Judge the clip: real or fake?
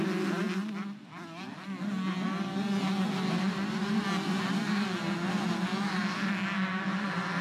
real